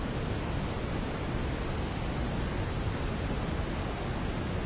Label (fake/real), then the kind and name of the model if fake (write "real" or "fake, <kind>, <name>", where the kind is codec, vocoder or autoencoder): real